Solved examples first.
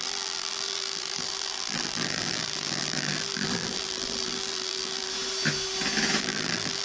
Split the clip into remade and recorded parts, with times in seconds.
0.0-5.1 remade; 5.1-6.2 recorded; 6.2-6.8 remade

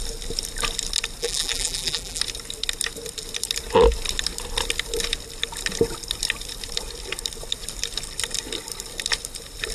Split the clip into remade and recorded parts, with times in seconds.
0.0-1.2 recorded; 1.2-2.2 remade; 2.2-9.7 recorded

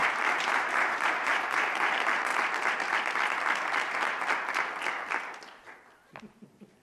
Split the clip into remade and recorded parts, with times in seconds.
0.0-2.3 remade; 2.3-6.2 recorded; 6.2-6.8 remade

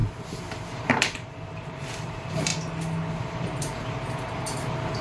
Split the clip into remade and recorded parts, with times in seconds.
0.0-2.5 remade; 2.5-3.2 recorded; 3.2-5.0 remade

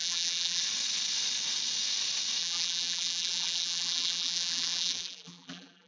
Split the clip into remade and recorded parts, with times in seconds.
0.0-0.6 remade; 0.6-2.4 recorded; 2.4-5.9 remade

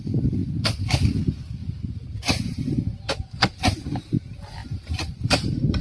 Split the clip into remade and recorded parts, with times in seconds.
0.0-1.6 recorded; 1.6-3.1 remade; 3.1-4.6 recorded; 4.6-5.8 remade